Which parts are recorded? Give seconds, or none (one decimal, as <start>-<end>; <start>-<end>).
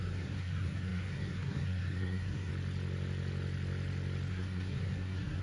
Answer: 2.5-4.3